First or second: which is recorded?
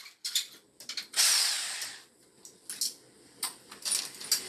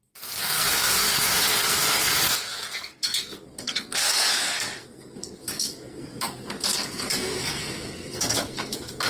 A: first